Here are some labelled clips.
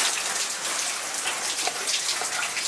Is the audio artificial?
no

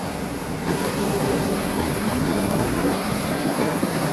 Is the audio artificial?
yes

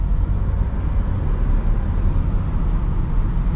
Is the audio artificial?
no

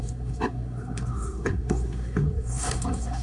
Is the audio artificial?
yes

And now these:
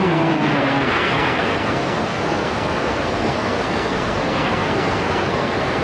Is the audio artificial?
yes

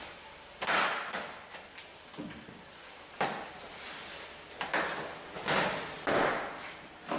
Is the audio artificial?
no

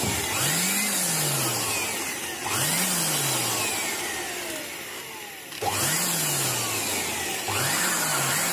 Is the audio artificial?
no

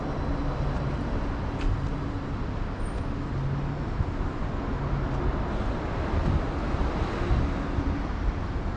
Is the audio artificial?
no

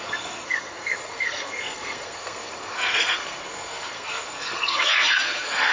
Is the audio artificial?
yes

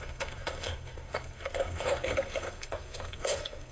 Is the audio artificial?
yes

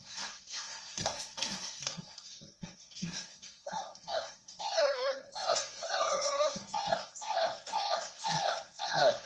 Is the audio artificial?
yes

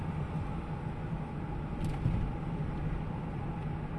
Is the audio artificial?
no